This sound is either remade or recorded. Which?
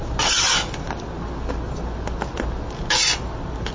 recorded